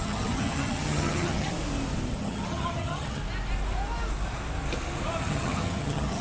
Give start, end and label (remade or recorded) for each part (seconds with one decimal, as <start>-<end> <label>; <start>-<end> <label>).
0.0-1.5 remade; 1.5-2.1 recorded; 2.1-3.2 remade; 3.2-5.2 recorded; 5.2-6.2 remade